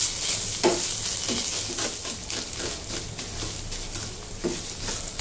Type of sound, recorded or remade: recorded